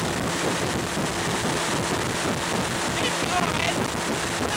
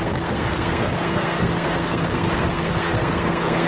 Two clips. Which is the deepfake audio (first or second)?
second